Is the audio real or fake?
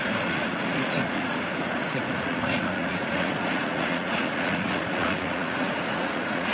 fake